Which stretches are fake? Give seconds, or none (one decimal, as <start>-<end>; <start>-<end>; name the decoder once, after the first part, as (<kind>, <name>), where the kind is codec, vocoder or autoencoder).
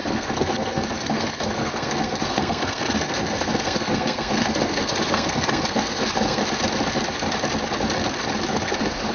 0.0-6.4 (codec, SNAC); 8.5-9.1